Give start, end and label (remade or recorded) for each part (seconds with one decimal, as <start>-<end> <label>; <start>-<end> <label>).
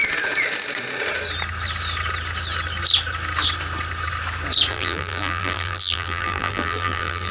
0.0-4.7 recorded; 4.7-7.3 remade